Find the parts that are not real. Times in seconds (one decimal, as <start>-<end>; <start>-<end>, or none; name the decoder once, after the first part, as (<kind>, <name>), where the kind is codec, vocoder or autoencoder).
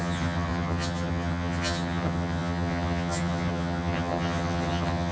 0.0-5.1 (vocoder, HiFi-GAN)